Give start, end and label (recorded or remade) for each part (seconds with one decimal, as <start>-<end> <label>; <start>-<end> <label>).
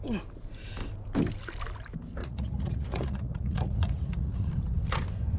0.0-2.2 recorded; 2.2-4.5 remade; 4.5-5.4 recorded